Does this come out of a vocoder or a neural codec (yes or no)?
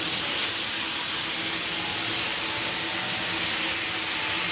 no